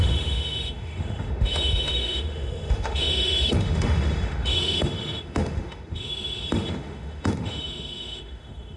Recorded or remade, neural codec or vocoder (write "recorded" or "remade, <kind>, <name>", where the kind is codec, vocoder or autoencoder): remade, autoencoder, DAC-VAE